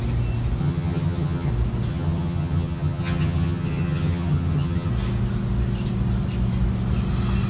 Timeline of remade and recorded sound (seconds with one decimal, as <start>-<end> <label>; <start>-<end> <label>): 0.0-0.6 recorded; 0.6-1.5 remade; 1.5-1.9 recorded; 1.9-4.9 remade; 4.9-7.5 recorded